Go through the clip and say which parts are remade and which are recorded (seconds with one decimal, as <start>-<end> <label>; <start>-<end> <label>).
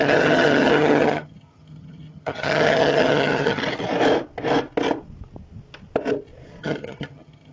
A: 0.0-3.6 remade; 3.6-6.6 recorded; 6.6-7.5 remade